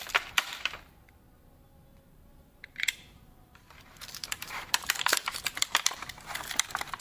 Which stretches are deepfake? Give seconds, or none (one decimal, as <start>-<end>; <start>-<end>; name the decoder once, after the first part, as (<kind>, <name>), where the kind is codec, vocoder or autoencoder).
1.9-6.1 (vocoder, BigVGAN v2)